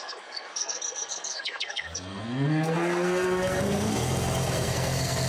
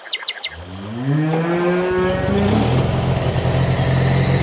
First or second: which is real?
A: second